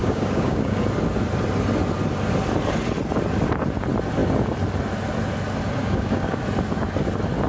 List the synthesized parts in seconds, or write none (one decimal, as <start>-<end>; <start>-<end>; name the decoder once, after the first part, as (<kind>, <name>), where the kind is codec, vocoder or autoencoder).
0.0-0.8 (codec, DAC); 5.8-6.4